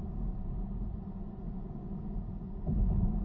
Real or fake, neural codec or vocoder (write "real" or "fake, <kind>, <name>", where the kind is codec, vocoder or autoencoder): real